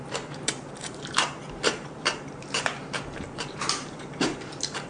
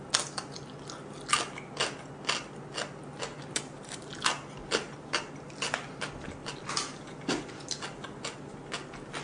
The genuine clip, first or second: second